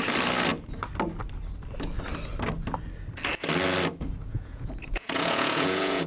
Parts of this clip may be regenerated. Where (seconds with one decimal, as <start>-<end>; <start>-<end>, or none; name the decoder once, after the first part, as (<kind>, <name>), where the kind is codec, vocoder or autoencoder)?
4.2-6.1 (vocoder, Vocos)